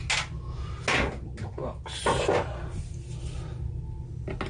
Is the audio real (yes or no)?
yes